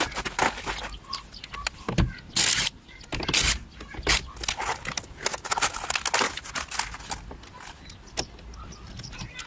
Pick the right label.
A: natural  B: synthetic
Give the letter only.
A